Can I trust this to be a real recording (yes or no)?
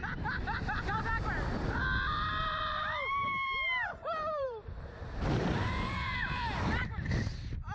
no